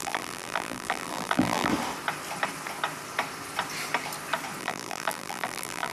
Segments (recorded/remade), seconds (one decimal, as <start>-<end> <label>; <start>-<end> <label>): 0.0-1.7 remade; 1.7-4.6 recorded; 4.6-5.9 remade